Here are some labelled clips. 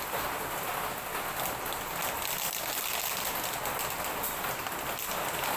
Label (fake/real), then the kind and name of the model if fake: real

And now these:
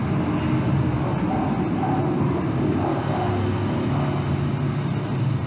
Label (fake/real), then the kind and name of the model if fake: real